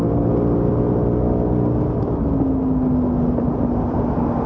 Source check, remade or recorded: recorded